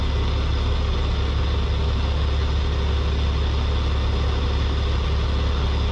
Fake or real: real